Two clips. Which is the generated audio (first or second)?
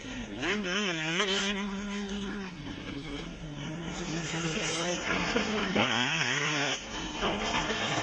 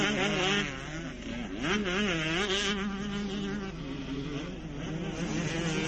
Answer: first